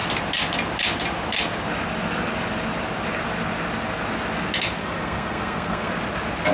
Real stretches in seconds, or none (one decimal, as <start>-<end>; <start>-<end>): 0.0-4.8; 5.9-6.5